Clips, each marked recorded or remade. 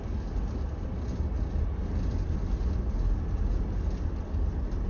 recorded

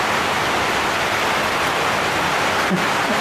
recorded